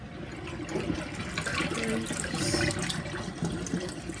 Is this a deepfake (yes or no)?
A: no